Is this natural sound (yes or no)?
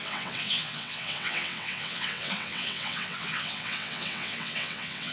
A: no